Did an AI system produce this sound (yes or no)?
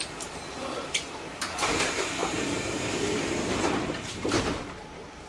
yes